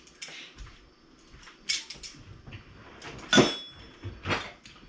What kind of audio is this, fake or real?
real